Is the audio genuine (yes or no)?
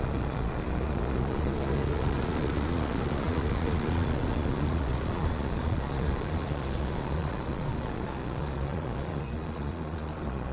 no